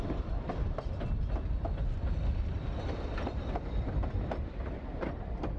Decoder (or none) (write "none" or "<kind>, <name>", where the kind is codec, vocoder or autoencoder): none